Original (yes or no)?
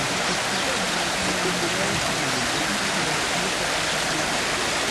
yes